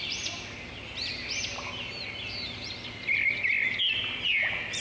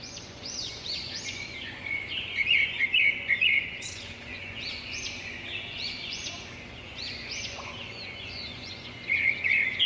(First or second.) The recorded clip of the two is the first